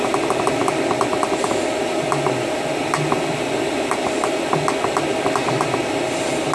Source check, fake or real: fake